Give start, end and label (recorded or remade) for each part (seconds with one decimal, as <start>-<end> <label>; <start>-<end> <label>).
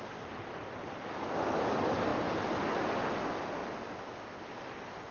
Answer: 0.0-5.1 recorded